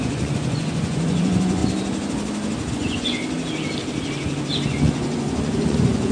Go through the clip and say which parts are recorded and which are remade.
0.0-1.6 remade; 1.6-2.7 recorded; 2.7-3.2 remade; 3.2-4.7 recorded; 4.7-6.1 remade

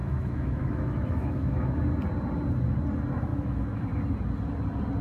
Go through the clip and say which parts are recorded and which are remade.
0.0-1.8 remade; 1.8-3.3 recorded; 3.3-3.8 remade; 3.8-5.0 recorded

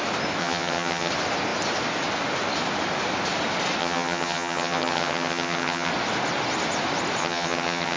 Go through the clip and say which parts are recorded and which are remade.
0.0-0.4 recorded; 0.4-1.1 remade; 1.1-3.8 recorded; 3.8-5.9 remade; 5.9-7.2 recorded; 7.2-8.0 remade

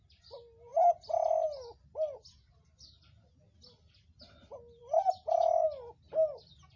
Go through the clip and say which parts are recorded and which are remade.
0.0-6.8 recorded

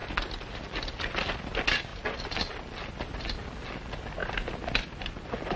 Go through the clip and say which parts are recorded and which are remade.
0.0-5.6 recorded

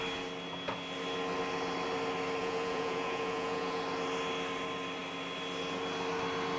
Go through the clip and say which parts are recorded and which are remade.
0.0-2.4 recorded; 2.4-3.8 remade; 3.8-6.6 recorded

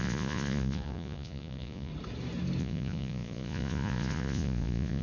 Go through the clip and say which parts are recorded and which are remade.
0.0-1.9 remade; 1.9-2.6 recorded; 2.6-5.0 remade

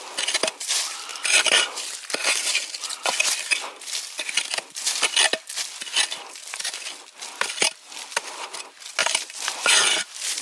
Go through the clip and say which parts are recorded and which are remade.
0.0-1.1 recorded; 1.1-1.6 remade; 1.6-9.0 recorded; 9.0-10.4 remade